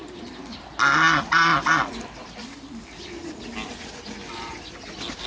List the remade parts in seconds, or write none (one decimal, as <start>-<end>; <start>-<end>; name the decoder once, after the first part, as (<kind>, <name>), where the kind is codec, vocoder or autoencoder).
none